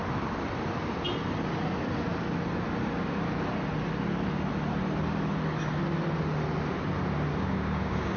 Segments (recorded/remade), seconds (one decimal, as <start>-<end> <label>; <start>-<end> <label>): 0.0-7.3 recorded; 7.3-8.2 remade